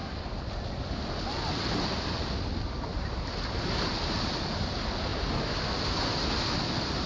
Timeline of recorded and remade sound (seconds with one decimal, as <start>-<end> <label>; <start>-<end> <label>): 0.0-7.1 recorded